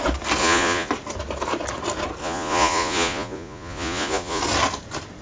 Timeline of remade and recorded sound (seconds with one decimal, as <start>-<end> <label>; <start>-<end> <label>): 0.0-0.4 recorded; 0.4-0.9 remade; 0.9-2.2 recorded; 2.2-4.4 remade; 4.4-5.2 recorded